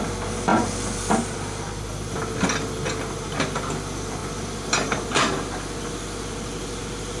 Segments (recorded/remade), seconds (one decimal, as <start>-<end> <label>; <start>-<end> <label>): 0.0-7.2 recorded